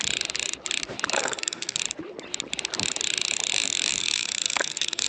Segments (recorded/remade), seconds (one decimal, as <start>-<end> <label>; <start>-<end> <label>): 0.0-1.2 recorded; 1.2-1.8 remade; 1.8-4.0 recorded; 4.0-5.1 remade